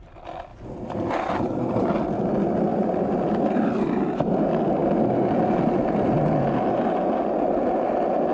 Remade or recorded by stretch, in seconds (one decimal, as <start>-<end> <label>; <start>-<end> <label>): 0.0-8.3 recorded